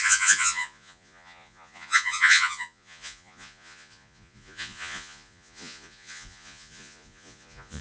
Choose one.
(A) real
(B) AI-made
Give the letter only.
B